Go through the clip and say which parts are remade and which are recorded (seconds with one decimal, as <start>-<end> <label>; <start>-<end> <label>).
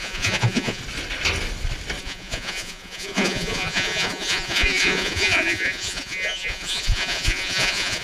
0.0-0.8 remade; 0.8-2.0 recorded; 2.0-8.0 remade